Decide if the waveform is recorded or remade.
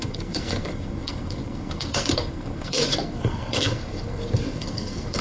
remade